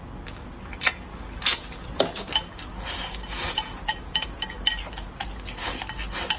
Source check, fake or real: real